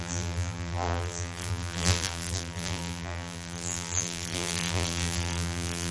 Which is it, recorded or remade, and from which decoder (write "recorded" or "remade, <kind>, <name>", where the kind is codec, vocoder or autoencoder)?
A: remade, vocoder, BigVGAN v2